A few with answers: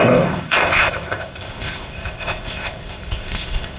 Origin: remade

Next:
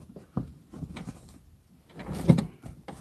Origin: recorded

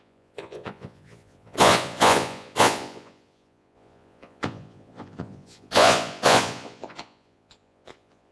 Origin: remade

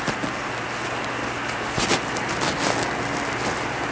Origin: recorded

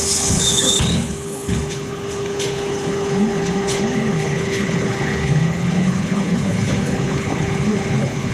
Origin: remade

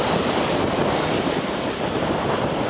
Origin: recorded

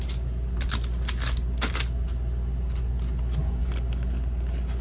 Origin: recorded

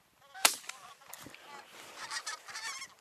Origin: recorded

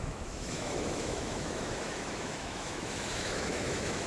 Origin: remade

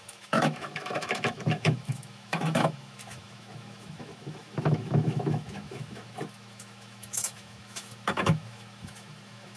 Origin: remade